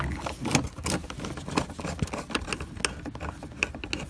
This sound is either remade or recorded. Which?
recorded